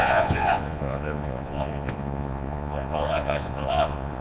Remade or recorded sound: remade